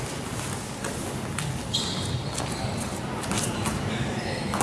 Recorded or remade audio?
recorded